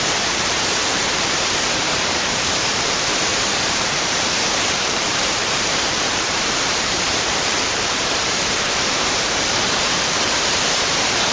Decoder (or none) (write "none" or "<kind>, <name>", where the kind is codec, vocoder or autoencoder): vocoder, BigVGAN v2